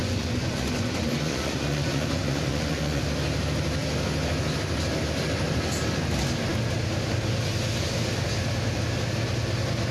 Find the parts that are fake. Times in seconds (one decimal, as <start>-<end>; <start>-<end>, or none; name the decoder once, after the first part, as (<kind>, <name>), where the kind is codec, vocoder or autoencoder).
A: 0.0-3.0 (vocoder, Vocos)